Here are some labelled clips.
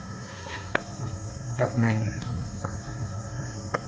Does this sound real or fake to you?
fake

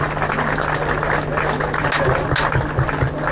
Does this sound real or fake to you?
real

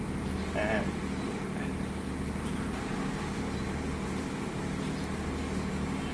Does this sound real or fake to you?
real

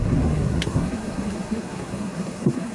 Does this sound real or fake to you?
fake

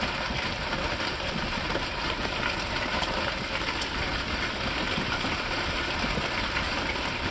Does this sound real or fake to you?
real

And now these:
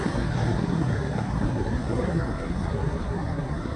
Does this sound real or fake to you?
fake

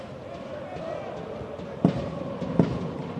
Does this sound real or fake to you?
real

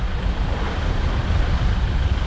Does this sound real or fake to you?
real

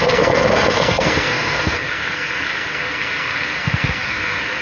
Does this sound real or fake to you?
fake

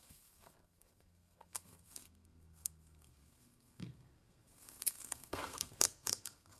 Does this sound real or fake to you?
fake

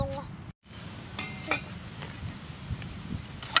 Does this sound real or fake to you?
real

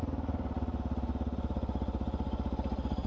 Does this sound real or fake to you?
real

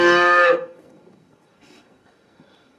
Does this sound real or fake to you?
fake